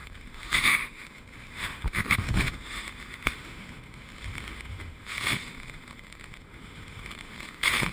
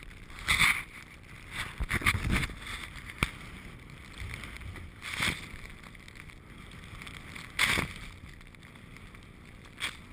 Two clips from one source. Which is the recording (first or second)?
second